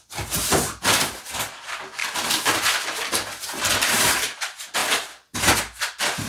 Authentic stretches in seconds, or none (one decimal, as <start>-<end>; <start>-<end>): 0.0-6.3